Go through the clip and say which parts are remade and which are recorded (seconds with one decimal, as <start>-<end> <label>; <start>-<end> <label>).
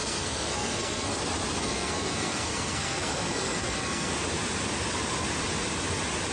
0.0-1.2 remade; 1.2-1.6 recorded; 1.6-4.1 remade; 4.1-6.3 recorded